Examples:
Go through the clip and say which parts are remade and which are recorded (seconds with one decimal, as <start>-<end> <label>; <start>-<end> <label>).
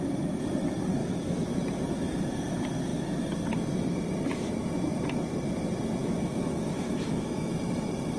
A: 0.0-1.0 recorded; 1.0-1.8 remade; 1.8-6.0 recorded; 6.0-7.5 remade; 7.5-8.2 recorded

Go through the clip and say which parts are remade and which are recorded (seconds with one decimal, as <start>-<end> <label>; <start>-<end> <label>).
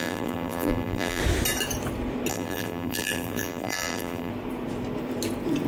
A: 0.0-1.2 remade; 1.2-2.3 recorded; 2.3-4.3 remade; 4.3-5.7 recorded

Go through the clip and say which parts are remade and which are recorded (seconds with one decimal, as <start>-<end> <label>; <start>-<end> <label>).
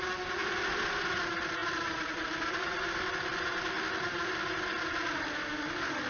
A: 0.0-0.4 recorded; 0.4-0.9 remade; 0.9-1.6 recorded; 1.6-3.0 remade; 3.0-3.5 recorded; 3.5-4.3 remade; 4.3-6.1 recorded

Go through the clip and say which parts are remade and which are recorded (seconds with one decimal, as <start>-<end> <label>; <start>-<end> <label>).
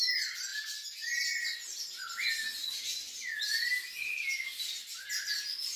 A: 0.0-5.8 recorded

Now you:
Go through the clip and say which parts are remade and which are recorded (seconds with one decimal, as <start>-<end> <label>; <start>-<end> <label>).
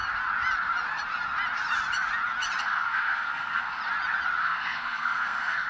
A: 0.0-2.6 recorded; 2.6-3.8 remade; 3.8-4.4 recorded; 4.4-5.7 remade